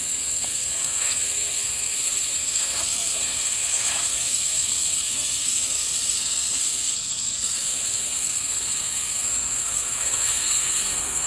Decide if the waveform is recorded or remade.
remade